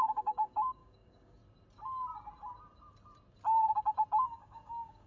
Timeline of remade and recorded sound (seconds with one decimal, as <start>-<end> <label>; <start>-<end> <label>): 0.0-1.4 remade; 1.4-4.2 recorded; 4.2-5.1 remade